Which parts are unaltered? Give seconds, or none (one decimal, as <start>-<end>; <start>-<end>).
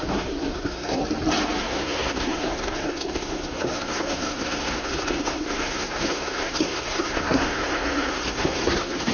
1.0-1.6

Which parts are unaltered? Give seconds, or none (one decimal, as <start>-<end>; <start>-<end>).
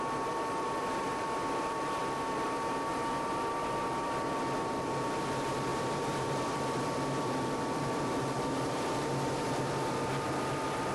none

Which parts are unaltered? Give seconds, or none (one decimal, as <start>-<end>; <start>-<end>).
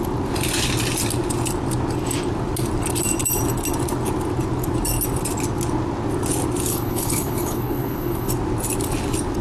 0.0-6.7; 8.3-9.4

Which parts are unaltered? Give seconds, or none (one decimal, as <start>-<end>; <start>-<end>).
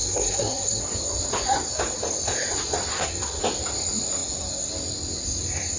0.8-2.9; 3.4-5.8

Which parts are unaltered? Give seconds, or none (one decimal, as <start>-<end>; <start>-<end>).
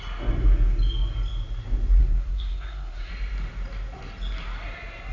0.0-2.0; 3.1-5.1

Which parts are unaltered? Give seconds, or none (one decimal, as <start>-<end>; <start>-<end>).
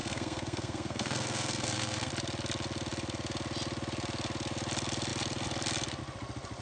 2.1-6.6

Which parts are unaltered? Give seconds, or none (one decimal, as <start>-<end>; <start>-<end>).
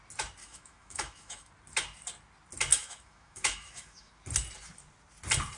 0.0-0.4; 1.5-2.7; 4.1-5.6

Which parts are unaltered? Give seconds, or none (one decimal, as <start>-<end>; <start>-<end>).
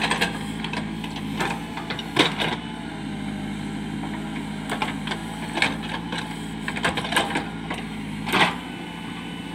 0.0-9.5